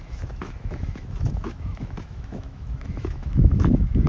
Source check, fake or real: fake